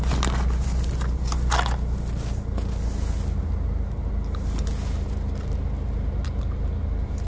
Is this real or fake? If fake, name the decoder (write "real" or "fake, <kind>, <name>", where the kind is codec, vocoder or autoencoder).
real